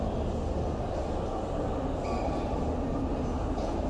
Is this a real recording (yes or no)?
yes